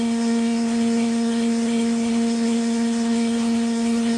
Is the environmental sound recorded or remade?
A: remade